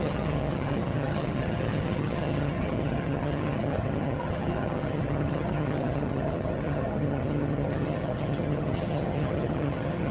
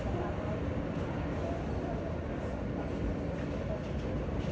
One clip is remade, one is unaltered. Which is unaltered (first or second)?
second